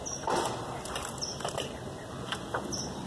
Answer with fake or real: real